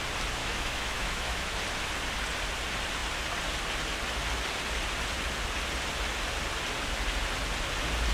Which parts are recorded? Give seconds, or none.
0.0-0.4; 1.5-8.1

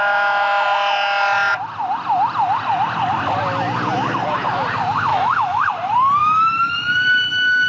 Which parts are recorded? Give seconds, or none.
0.0-5.1; 5.7-6.2

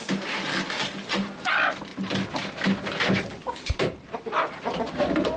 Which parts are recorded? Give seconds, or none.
0.0-5.4

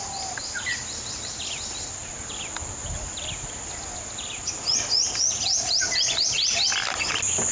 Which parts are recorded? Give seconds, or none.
0.0-7.5

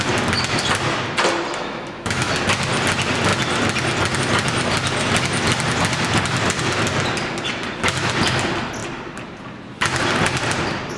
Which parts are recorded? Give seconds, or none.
0.0-1.5; 2.3-11.0

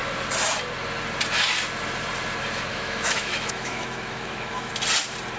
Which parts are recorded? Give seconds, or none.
0.0-2.7; 4.7-5.4

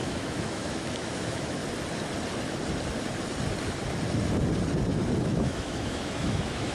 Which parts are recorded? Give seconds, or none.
1.6-5.2

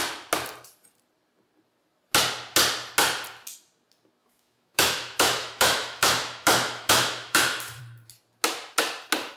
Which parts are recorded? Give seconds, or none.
0.0-4.2; 7.8-9.4